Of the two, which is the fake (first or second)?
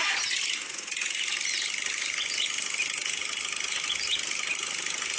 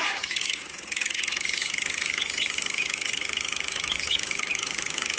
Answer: second